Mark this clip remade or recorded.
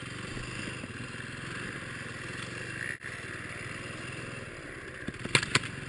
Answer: recorded